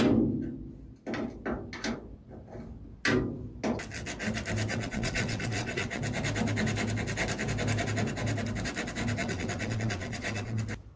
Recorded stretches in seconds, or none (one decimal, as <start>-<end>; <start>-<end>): 0.0-4.7; 6.0-9.2; 10.6-11.0